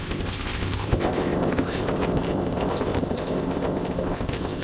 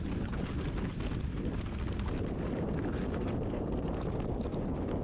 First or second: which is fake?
first